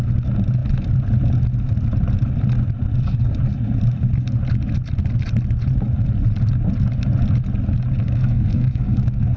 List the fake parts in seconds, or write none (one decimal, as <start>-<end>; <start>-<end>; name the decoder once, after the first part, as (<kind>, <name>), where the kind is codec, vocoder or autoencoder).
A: 8.0-9.4 (codec, SNAC)